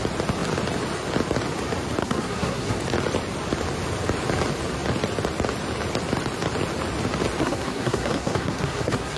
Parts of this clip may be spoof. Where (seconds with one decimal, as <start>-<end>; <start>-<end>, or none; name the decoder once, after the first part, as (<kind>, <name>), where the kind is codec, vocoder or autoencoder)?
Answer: 2.0-2.8 (codec, SNAC); 7.4-9.2

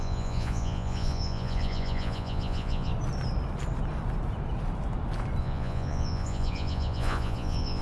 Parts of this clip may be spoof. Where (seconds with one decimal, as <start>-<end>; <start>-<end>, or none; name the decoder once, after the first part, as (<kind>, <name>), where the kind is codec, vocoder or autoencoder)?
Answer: 0.0-2.9 (vocoder, Vocos); 5.4-7.8

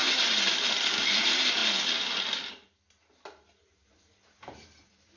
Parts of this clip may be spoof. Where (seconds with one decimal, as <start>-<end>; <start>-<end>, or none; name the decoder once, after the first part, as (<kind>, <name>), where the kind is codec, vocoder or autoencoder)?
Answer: 1.2-1.6 (vocoder, BigVGAN v2); 2.5-5.2